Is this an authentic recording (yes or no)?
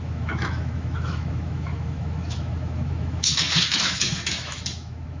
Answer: no